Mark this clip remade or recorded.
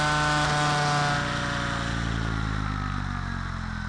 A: recorded